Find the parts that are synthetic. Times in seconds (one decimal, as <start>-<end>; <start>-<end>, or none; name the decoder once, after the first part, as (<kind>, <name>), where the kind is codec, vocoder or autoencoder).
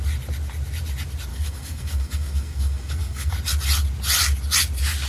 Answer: 1.3-3.3 (codec, SNAC)